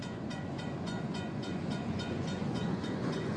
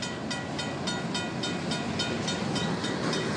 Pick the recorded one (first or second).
second